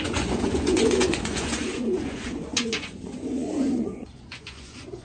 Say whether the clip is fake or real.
fake